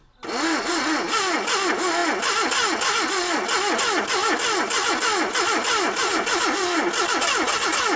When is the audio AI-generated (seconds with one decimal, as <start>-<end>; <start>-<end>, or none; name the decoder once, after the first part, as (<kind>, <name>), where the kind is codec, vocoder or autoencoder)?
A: none